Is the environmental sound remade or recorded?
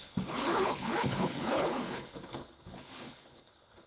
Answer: remade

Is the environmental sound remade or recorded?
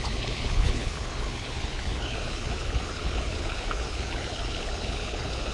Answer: remade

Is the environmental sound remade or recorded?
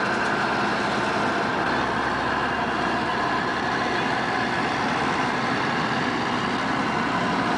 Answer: recorded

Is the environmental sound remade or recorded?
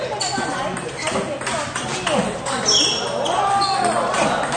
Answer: recorded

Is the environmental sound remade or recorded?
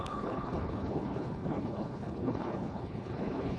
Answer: remade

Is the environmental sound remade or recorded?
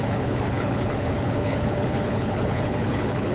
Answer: remade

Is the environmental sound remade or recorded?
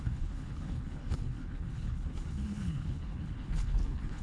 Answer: remade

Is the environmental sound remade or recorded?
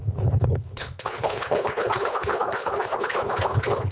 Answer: remade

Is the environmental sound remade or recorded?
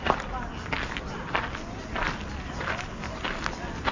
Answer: recorded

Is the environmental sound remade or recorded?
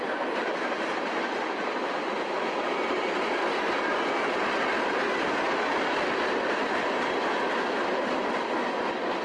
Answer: recorded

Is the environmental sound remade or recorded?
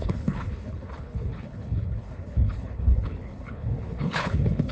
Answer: remade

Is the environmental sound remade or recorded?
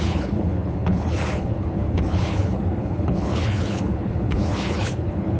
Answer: remade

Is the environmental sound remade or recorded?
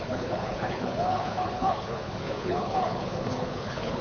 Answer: remade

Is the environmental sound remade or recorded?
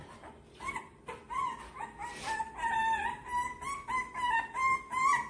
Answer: recorded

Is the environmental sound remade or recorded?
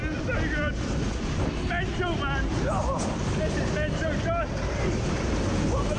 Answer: recorded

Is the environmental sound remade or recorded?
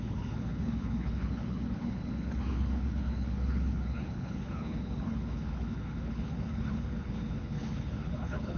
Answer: remade